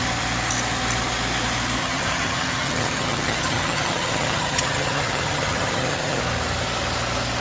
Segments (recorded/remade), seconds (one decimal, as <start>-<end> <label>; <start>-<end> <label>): 0.0-1.8 recorded; 1.8-6.2 remade; 6.2-7.4 recorded

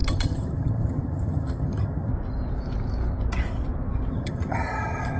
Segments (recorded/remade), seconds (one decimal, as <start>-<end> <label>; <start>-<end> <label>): 0.0-2.1 remade; 2.1-4.1 recorded; 4.1-5.2 remade

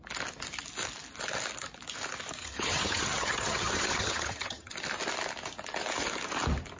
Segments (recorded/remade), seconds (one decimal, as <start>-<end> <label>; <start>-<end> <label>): 0.0-2.4 recorded; 2.4-4.7 remade; 4.7-6.8 recorded